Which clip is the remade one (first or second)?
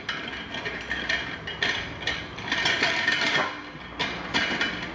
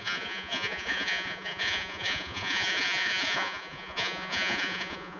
second